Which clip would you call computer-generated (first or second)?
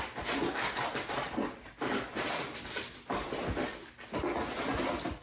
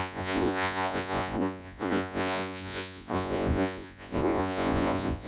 second